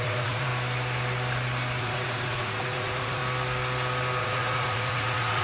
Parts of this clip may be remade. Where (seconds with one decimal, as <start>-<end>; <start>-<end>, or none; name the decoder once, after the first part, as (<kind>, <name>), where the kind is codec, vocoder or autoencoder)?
0.0-0.5 (vocoder, Vocos); 1.8-3.2; 4.2-5.4